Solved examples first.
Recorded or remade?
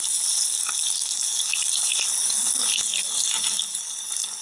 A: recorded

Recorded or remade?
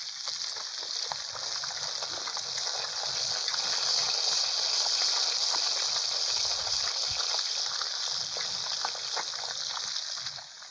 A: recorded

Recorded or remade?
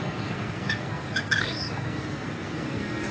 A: remade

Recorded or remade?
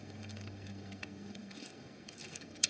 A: remade